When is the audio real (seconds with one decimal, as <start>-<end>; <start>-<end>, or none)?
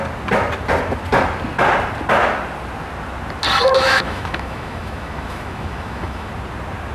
0.0-3.7; 6.3-6.9